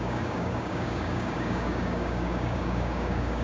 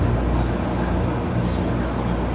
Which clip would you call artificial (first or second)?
first